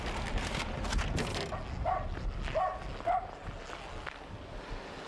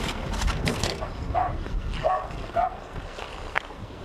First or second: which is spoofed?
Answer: second